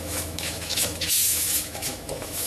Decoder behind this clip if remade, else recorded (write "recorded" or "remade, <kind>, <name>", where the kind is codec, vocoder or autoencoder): remade, autoencoder, DAC-VAE